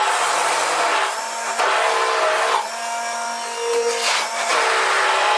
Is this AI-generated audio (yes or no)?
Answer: no